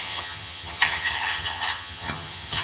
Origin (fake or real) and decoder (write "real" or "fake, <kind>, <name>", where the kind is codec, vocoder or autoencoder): fake, vocoder, HiFi-GAN